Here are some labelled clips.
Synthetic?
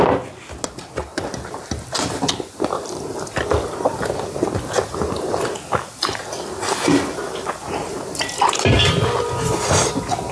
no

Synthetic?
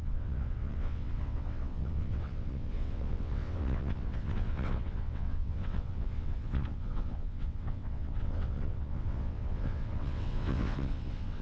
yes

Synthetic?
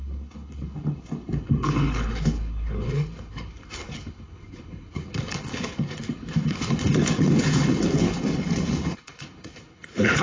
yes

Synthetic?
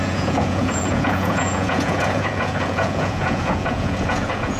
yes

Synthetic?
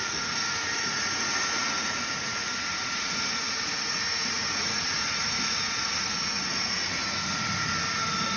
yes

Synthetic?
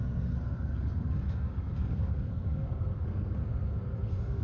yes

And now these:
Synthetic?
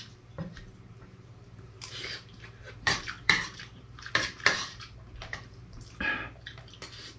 yes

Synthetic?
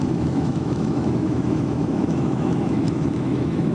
yes